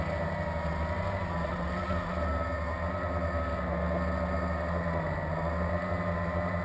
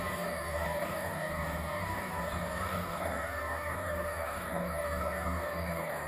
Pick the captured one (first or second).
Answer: first